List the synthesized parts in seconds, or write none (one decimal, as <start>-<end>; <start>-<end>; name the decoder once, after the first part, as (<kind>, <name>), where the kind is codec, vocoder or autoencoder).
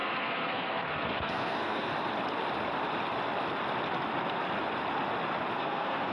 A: 0.0-1.9 (codec, SNAC); 5.6-6.1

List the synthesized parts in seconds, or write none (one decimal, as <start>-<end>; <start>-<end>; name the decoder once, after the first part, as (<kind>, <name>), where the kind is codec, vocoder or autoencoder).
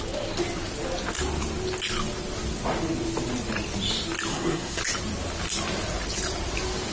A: 4.3-4.8 (codec, SNAC)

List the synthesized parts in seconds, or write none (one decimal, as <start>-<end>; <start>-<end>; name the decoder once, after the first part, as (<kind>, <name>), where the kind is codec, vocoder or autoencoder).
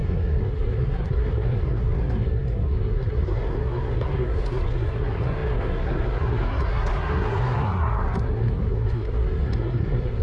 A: 0.0-10.2 (codec, SNAC)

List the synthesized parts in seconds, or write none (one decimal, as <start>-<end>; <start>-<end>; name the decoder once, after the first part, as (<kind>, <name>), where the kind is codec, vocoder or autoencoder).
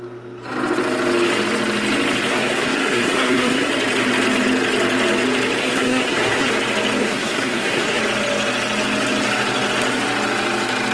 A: 2.3-3.7 (codec, SNAC); 5.6-6.5; 7.0-8.0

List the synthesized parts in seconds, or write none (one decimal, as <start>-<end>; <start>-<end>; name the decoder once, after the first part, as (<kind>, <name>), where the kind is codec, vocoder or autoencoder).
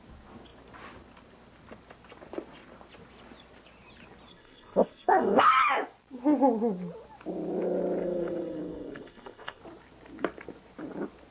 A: 4.3-5.6 (codec, SNAC); 8.0-9.6